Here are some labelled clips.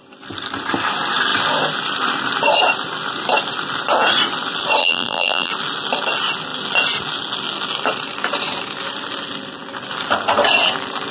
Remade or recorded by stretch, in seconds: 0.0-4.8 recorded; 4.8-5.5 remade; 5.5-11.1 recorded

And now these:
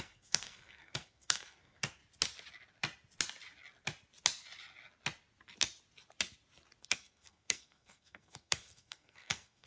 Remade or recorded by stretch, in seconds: 0.0-2.0 remade; 2.0-6.8 recorded; 6.8-9.7 remade

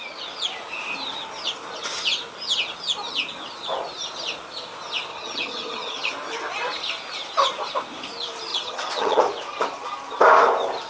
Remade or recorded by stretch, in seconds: 0.0-5.1 recorded; 5.1-6.1 remade; 6.1-8.5 recorded; 8.5-9.2 remade; 9.2-10.9 recorded

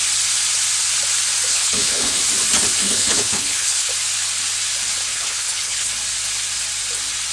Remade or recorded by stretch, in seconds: 0.0-1.5 recorded; 1.5-2.2 remade; 2.2-2.8 recorded; 2.8-3.9 remade; 3.9-5.1 recorded; 5.1-5.9 remade; 5.9-7.3 recorded